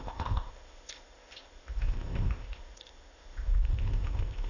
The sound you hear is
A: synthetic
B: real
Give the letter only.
A